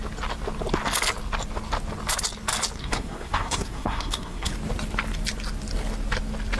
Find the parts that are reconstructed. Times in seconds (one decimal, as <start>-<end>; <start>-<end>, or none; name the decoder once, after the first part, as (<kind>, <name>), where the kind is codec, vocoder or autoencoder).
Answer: 2.8-4.5 (codec, SNAC)